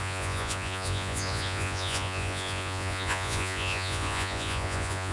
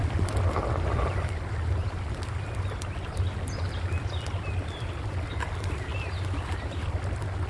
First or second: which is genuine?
second